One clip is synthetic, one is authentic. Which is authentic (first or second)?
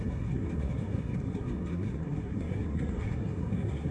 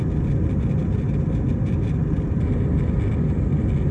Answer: second